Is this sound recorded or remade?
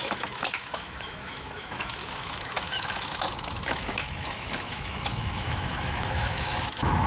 remade